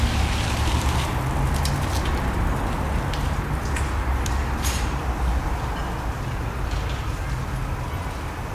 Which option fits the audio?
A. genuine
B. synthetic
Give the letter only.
A